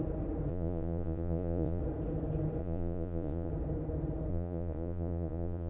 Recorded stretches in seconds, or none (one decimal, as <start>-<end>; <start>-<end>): 0.0-0.5; 1.8-2.6; 3.5-4.3